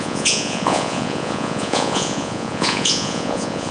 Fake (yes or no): yes